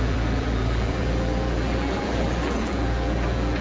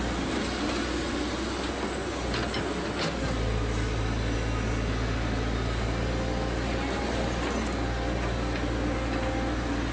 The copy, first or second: first